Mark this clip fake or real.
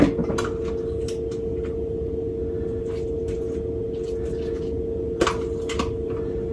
real